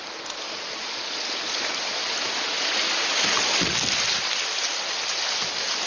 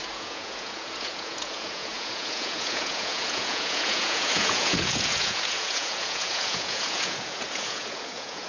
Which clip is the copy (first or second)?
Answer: second